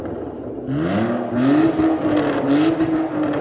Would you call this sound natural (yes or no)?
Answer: yes